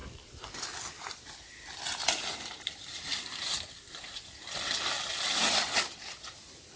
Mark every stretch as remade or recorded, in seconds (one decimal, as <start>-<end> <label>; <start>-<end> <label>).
0.0-6.8 recorded